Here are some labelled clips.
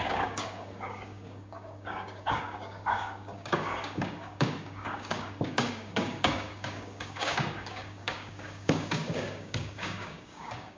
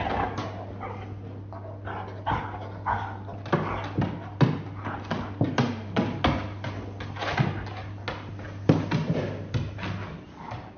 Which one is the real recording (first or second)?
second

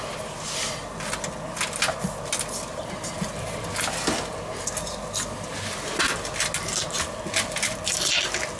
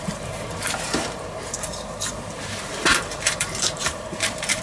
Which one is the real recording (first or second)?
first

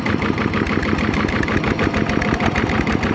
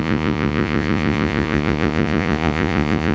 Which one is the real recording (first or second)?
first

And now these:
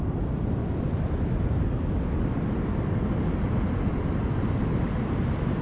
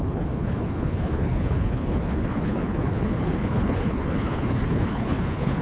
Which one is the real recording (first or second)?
first